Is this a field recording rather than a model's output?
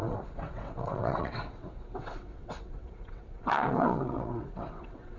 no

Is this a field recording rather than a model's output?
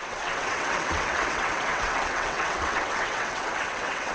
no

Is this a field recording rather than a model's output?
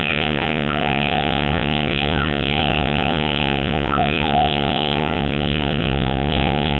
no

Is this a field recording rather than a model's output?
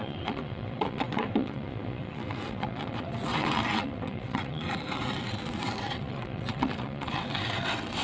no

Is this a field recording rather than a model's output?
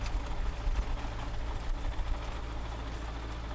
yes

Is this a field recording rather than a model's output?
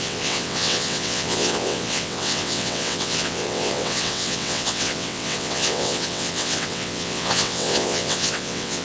no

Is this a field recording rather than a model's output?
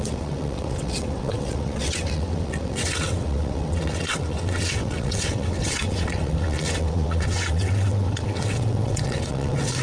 no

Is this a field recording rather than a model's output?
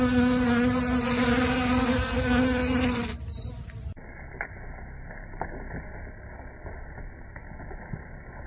yes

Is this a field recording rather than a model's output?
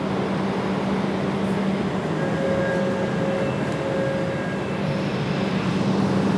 yes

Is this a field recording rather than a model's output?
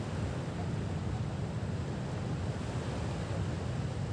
yes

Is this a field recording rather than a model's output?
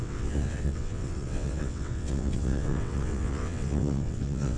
no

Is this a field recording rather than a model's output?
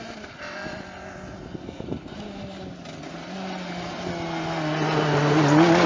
yes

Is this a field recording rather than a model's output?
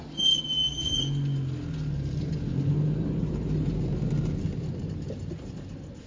yes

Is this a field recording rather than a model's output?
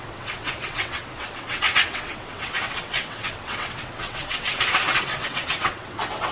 no